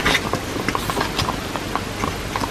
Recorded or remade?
recorded